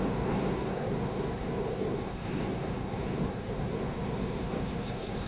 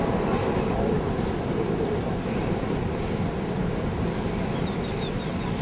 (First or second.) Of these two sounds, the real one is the second